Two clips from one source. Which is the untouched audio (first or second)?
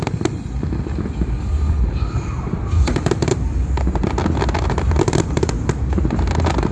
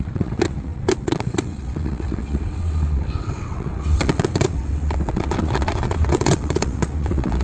first